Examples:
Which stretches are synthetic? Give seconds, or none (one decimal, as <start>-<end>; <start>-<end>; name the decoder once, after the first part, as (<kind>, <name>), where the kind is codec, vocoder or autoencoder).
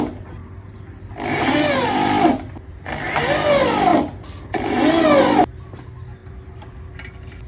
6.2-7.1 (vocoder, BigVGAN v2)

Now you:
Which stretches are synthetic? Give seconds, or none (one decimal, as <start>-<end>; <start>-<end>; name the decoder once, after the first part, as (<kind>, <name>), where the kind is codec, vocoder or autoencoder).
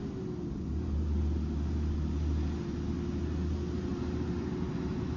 3.9-4.7 (vocoder, BigVGAN v2)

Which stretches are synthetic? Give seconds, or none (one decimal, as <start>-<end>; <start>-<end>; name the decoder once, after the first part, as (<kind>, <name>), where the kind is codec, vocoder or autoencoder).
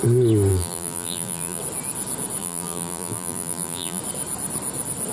0.5-1.6 (vocoder, BigVGAN v2); 2.4-4.0